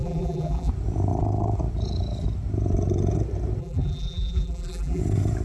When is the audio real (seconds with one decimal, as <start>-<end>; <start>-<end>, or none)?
0.7-3.6; 5.0-5.4